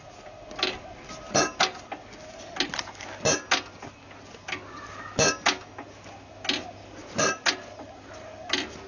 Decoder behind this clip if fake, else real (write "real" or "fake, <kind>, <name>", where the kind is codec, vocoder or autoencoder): real